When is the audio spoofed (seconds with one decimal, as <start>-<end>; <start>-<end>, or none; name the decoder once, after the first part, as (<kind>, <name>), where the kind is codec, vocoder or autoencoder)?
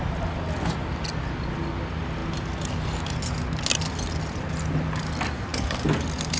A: none